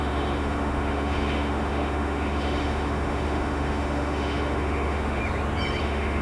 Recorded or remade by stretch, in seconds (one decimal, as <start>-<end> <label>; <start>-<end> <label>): 0.0-5.2 remade; 5.2-5.8 recorded; 5.8-6.2 remade